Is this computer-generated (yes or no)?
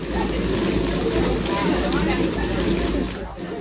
no